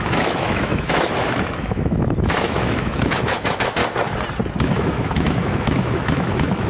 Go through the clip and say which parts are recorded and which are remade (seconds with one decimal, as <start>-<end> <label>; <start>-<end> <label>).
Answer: 0.0-3.8 remade; 3.8-4.6 recorded; 4.6-6.7 remade